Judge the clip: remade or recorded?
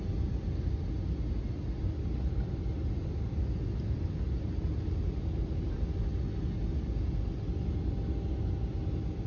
recorded